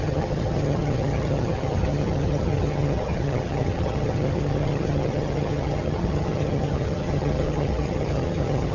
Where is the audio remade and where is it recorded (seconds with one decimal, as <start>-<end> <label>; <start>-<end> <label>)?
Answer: 0.0-8.7 remade